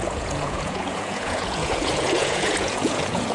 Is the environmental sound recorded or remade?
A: remade